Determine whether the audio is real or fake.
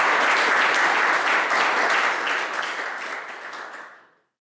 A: real